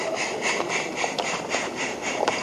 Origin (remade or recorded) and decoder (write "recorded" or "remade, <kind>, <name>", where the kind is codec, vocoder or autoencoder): recorded